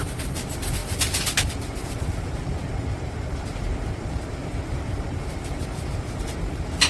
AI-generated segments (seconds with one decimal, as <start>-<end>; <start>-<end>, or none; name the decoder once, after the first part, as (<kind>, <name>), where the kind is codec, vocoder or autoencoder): 0.0-0.8 (vocoder, BigVGAN v2); 1.8-6.9